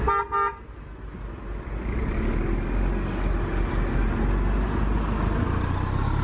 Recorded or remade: recorded